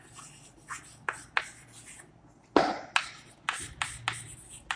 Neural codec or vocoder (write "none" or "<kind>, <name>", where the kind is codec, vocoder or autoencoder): none